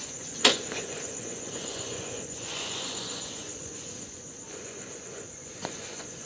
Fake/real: fake